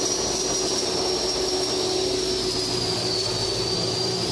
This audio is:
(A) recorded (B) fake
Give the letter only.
A